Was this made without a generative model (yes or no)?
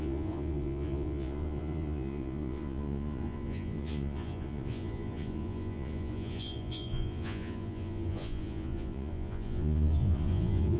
no